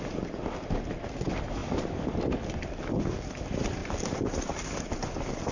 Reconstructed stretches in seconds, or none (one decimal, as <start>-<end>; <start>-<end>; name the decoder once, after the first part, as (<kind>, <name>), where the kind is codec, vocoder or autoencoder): 1.6-2.2 (vocoder, BigVGAN v2); 3.8-4.9